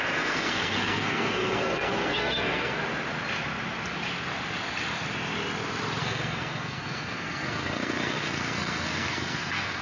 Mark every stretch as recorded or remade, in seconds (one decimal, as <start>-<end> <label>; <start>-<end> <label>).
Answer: 0.0-2.8 remade; 2.8-6.0 recorded; 6.0-9.8 remade